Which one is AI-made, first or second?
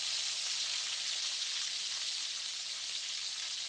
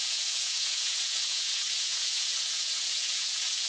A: second